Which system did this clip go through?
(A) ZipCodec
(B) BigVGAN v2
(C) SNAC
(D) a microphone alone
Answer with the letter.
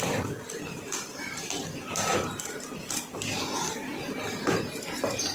D